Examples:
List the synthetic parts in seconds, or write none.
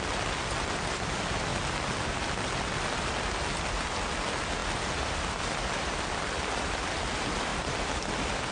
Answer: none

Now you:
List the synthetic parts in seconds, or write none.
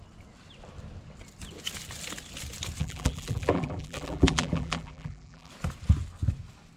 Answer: 2.8-5.5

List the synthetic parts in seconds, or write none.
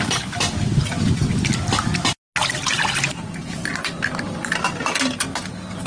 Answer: none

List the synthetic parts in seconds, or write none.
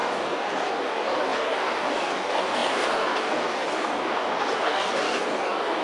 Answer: 0.0-5.8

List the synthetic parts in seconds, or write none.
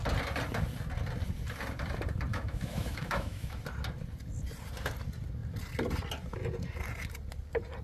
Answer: 2.3-3.6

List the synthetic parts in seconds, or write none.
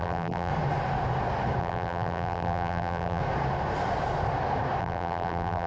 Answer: 0.0-0.5; 1.6-3.2; 4.8-5.7